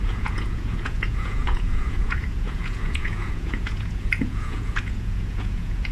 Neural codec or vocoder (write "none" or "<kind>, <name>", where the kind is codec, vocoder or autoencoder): vocoder, Vocos